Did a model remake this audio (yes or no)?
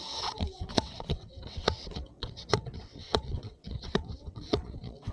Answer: yes